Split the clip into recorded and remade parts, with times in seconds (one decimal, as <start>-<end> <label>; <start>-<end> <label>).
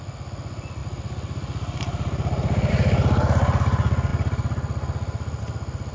0.0-5.9 recorded